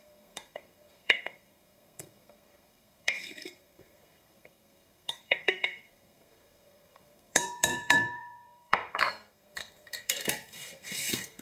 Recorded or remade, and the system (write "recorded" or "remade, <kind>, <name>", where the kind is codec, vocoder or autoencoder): remade, codec, SNAC